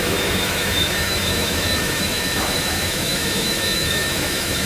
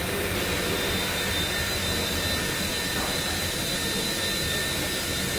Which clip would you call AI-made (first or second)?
first